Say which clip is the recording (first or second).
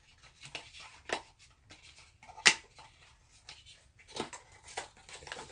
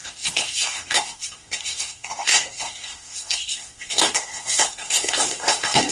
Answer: first